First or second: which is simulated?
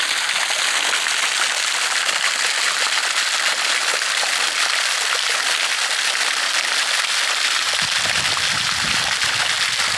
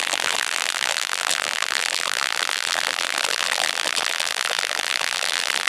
second